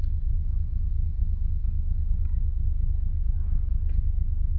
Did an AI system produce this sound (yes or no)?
no